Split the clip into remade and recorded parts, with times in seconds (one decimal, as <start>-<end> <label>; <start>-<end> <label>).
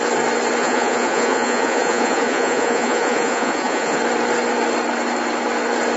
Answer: 0.0-0.6 recorded; 0.6-4.0 remade; 4.0-6.0 recorded